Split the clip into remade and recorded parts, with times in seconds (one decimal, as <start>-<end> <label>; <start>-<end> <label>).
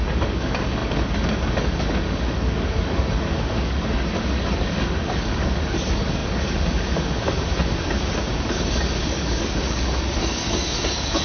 0.0-11.2 remade